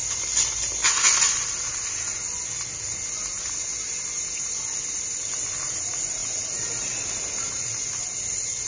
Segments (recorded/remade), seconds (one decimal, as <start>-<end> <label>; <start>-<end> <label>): 0.0-8.7 recorded